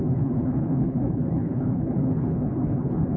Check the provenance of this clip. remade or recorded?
remade